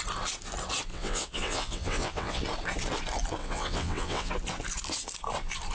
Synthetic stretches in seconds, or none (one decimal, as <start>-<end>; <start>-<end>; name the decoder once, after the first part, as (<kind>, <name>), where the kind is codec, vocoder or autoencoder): 0.9-2.4 (vocoder, WaveNeXt); 3.4-4.3